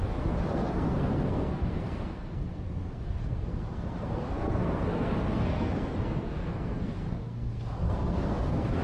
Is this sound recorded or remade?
remade